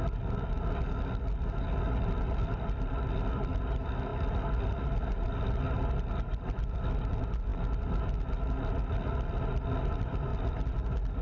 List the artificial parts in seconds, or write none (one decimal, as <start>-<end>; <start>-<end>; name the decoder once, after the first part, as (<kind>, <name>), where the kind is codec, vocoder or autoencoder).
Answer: none